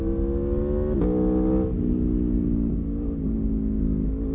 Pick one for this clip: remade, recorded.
recorded